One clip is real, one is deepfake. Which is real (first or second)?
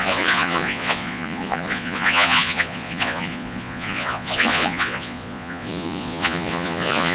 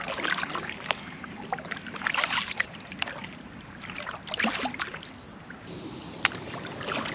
second